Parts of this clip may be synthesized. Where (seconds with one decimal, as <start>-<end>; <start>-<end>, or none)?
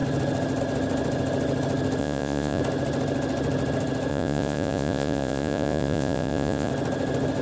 2.0-2.6; 4.1-6.7